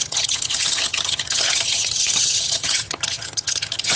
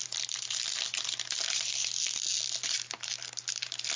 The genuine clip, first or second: second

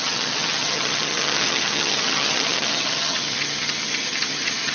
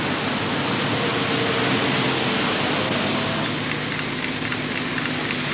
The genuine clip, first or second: second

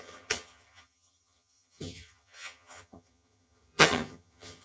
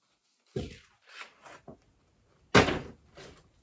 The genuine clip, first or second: second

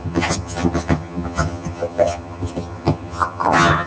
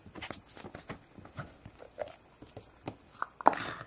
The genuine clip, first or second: second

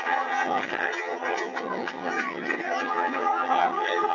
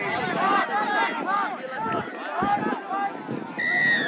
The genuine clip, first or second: second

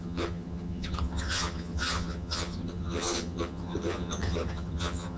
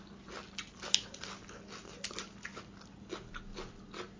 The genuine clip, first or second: second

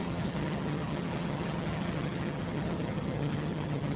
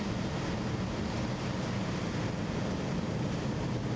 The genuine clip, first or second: second